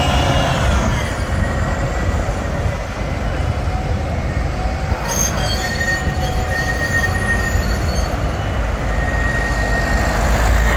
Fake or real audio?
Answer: real